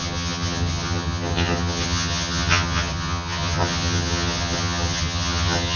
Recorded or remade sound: remade